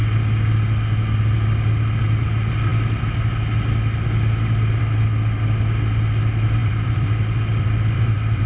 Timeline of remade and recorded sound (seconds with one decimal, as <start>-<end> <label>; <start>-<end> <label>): 0.0-6.6 recorded; 6.6-8.5 remade